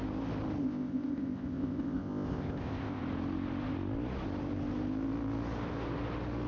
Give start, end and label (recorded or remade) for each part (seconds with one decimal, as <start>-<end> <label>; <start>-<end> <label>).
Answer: 0.0-0.6 recorded; 0.6-3.0 remade; 3.0-6.5 recorded